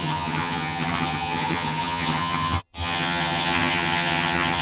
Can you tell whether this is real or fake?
fake